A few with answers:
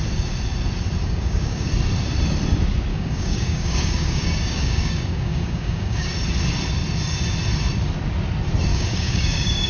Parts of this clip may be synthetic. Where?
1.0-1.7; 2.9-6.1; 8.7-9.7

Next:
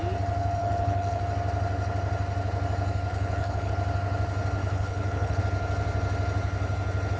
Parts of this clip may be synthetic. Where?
0.6-1.2; 3.1-3.7; 4.6-5.4